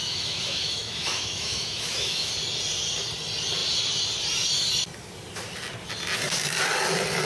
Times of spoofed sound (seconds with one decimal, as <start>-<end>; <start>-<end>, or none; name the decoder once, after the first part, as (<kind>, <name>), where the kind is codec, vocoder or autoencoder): 0.0-2.3 (autoencoder, DAC-VAE)